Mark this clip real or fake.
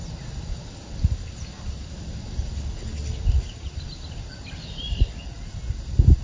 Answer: real